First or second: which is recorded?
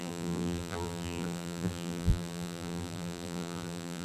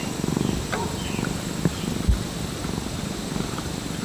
second